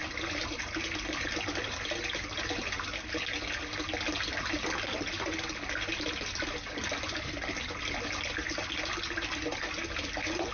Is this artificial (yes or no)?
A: no